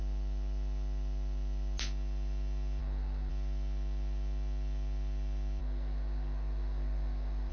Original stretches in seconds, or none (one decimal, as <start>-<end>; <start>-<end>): 0.0-2.8; 3.3-5.6